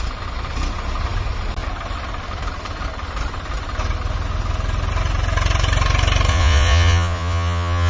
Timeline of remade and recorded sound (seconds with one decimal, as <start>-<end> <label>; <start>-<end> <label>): 0.0-6.3 recorded; 6.3-7.9 remade